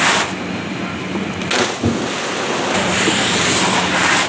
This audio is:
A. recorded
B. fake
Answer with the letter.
A